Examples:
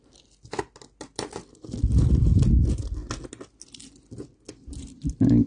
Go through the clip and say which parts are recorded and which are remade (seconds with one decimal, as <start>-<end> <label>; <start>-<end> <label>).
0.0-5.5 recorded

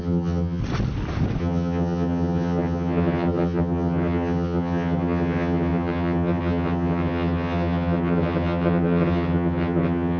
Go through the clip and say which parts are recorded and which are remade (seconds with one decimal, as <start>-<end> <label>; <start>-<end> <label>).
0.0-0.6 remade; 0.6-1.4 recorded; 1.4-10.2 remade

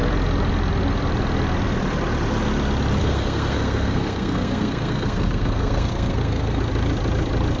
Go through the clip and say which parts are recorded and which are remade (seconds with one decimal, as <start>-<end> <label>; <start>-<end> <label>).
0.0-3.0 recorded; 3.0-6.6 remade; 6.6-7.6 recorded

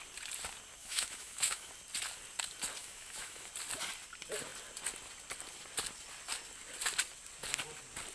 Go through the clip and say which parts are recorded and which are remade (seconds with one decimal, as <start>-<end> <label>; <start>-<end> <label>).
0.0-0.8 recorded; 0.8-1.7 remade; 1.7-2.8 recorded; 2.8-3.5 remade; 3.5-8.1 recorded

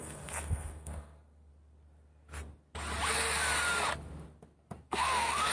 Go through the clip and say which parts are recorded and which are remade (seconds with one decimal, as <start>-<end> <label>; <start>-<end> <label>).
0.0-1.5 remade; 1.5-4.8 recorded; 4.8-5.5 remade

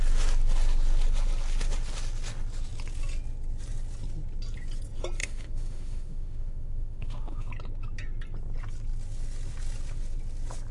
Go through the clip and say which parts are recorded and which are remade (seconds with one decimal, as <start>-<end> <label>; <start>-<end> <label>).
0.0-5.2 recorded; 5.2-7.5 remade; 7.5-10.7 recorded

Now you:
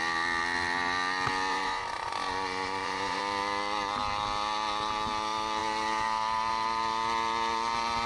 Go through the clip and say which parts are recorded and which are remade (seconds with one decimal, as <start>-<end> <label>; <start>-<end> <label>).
0.0-1.5 recorded; 1.5-3.2 remade; 3.2-8.1 recorded

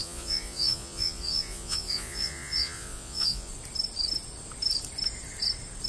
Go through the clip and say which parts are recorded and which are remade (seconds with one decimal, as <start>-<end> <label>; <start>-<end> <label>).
0.0-3.5 remade; 3.5-5.9 recorded